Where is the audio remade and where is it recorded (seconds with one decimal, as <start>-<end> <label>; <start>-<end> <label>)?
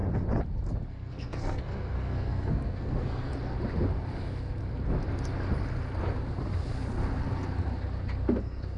0.0-0.9 recorded; 0.9-3.3 remade; 3.3-8.4 recorded; 8.4-8.8 remade